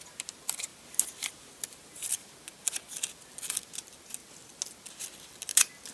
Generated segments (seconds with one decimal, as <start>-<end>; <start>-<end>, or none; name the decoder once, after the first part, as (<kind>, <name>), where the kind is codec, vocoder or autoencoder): none